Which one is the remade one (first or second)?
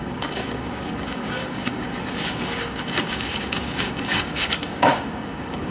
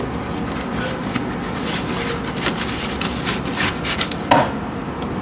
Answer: first